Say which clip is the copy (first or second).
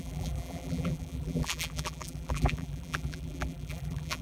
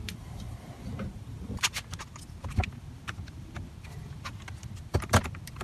first